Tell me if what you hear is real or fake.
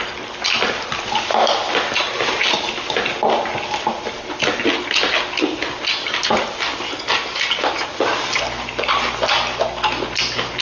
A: real